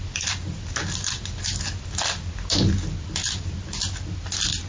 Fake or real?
real